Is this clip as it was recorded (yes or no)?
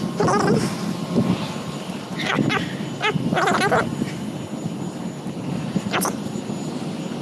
yes